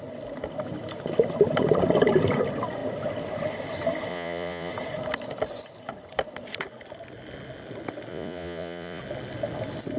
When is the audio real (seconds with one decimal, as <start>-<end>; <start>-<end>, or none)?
0.0-4.1; 4.7-8.1; 9.0-10.0